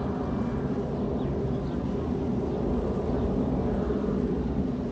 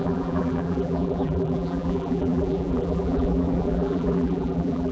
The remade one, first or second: second